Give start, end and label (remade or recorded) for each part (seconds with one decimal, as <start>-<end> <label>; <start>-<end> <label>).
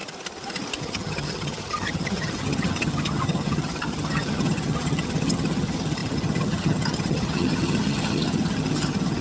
0.0-0.8 recorded; 0.8-9.2 remade